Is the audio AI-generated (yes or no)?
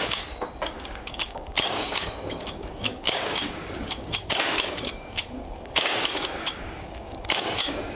yes